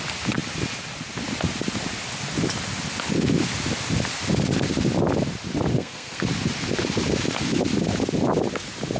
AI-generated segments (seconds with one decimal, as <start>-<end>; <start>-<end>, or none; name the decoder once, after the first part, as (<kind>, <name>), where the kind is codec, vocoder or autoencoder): 5.7-6.2 (codec, SNAC)